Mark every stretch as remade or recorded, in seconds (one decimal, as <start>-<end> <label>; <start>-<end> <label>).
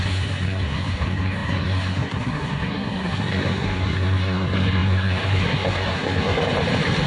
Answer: 0.0-6.4 remade; 6.4-7.1 recorded